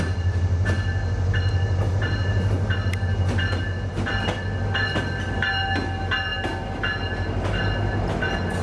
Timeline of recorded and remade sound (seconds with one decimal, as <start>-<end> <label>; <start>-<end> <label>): 0.0-8.6 recorded